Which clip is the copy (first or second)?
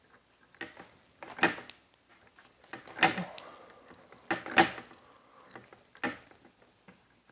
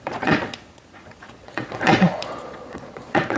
second